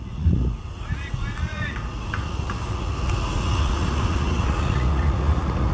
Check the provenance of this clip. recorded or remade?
remade